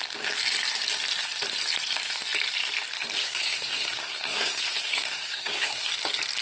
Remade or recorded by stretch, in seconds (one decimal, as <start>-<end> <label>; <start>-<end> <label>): 0.0-3.2 recorded; 3.2-5.9 remade; 5.9-6.4 recorded